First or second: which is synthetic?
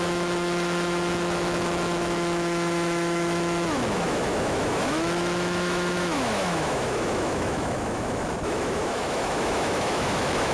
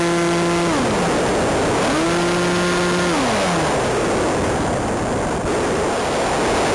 first